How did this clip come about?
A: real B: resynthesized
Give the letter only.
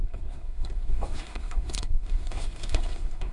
B